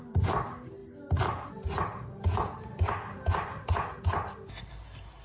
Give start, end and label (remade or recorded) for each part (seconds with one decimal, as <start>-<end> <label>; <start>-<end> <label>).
0.0-5.2 recorded